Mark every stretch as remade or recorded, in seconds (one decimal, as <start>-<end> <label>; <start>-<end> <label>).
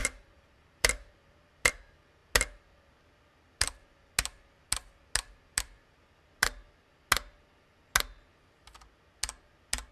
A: 0.0-1.1 remade; 1.1-9.9 recorded